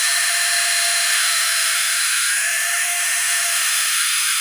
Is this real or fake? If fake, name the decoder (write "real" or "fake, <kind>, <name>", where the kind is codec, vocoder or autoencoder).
fake, autoencoder, DAC-VAE